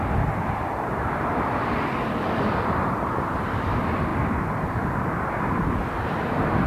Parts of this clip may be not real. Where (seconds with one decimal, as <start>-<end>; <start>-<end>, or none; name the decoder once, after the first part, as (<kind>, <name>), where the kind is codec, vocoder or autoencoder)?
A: 0.0-6.7 (vocoder, BigVGAN v2)